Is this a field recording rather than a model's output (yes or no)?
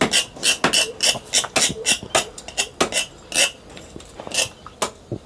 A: yes